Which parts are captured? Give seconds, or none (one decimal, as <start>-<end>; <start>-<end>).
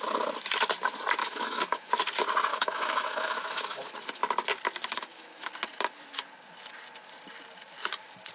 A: 0.0-1.2; 1.9-2.5; 3.9-4.9; 5.5-8.3